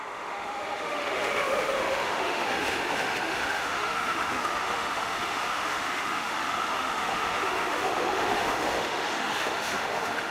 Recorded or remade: remade